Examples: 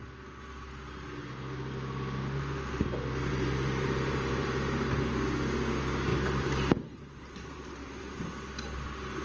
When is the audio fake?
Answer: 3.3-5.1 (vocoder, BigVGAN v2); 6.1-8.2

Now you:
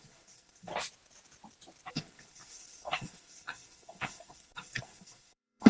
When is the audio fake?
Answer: 0.0-0.7 (codec, SNAC); 1.9-5.7

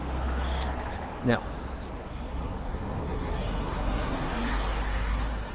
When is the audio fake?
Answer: 2.0-5.5 (codec, SNAC)

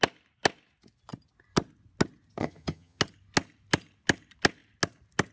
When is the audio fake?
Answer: 2.4-3.0 (vocoder, HiFi-GAN)